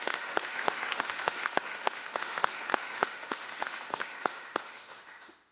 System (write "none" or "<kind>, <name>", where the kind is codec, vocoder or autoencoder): autoencoder, DAC-VAE